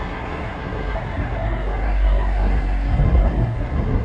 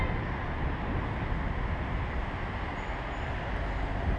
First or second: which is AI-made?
first